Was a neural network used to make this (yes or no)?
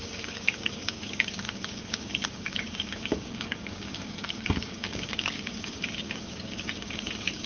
yes